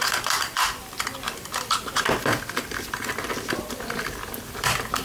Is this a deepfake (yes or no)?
yes